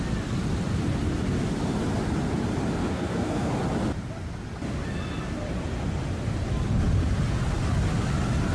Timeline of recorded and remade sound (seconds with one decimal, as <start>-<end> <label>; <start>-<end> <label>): 0.0-2.8 recorded; 2.8-3.5 remade; 3.5-8.5 recorded